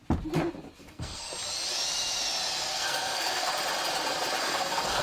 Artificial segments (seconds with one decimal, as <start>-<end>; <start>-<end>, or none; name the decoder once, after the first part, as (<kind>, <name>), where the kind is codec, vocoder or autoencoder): 0.8-1.3 (codec, SNAC); 2.7-3.5; 4.4-5.0